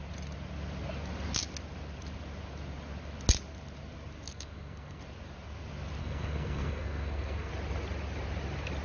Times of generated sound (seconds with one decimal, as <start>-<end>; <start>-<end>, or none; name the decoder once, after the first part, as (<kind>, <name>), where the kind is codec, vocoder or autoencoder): 4.3-5.0 (codec, SNAC); 6.0-7.5